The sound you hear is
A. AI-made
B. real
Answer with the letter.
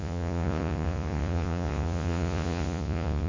A